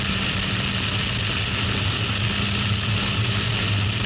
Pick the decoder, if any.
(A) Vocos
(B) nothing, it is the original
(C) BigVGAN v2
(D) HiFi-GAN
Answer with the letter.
B